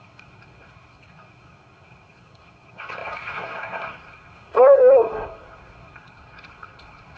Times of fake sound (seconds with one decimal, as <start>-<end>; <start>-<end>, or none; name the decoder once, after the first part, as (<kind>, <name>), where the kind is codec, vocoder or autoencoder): 0.0-7.2 (codec, SNAC)

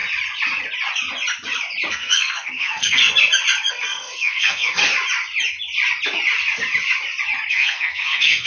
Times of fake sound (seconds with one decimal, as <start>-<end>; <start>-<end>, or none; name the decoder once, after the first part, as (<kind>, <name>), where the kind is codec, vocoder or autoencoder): 1.9-3.0 (codec, SNAC); 3.7-4.8; 7.5-8.5

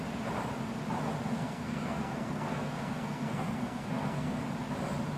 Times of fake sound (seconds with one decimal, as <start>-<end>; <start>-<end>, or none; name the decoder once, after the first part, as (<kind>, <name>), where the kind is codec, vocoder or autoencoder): 1.3-4.4 (codec, SNAC)

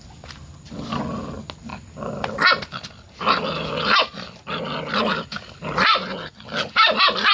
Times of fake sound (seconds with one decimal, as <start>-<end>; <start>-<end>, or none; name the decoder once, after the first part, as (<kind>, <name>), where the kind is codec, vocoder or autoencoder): none

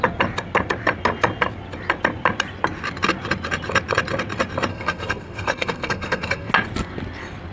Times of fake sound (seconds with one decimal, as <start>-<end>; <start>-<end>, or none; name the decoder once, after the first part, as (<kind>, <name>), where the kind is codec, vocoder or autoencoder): 4.7-6.5 (codec, SNAC)

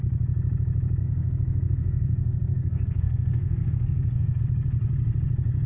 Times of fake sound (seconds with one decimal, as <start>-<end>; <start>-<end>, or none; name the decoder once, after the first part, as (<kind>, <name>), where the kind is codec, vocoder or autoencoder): 1.0-4.4 (codec, SNAC)

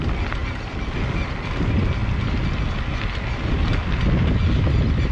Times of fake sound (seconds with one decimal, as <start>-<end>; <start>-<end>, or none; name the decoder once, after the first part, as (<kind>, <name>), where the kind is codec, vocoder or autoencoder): none

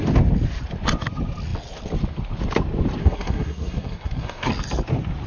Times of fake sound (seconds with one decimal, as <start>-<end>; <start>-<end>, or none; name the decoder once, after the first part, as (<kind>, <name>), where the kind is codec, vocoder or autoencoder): 3.0-4.5 (codec, SNAC)